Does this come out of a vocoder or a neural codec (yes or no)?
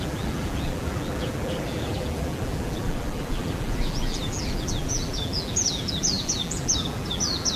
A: yes